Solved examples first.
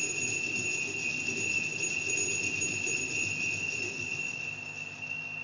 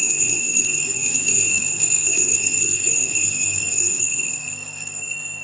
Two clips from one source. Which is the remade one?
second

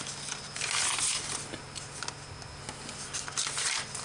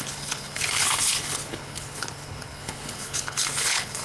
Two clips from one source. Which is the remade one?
second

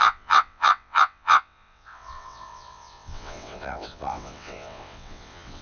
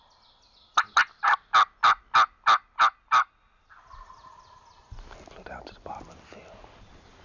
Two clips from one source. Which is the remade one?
first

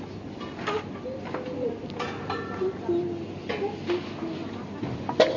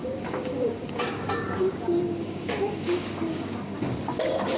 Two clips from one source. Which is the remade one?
second